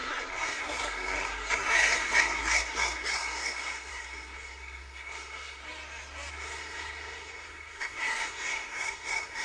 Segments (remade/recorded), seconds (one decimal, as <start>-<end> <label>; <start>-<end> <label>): 0.0-5.6 remade; 5.6-6.3 recorded; 6.3-9.4 remade